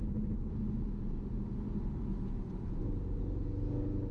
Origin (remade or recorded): recorded